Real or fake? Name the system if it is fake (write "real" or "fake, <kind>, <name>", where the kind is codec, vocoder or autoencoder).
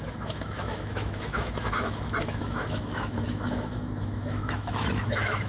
fake, autoencoder, DAC-VAE